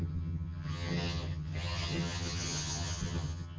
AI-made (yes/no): yes